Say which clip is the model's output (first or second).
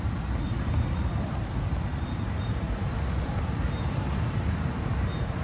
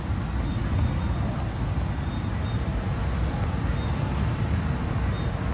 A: first